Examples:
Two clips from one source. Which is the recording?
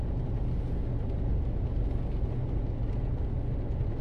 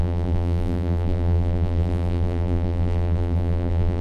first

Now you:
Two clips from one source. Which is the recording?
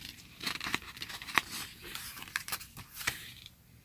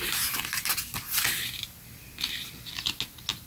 second